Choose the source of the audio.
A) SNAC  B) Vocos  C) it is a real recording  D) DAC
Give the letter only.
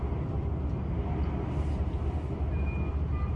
C